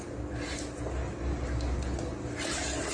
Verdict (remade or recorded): recorded